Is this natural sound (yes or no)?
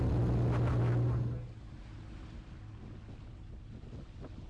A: yes